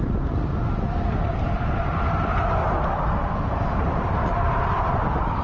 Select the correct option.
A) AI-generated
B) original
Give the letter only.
A